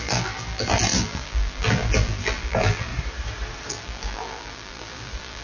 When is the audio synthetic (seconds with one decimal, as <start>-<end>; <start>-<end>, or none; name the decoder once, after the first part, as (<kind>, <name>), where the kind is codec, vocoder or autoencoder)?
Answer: 0.0-2.9 (vocoder, BigVGAN v2); 3.7-5.4